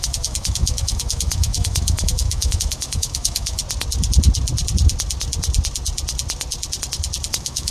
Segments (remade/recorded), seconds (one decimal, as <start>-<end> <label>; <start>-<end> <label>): 0.0-3.6 remade; 3.6-7.3 recorded; 7.3-7.7 remade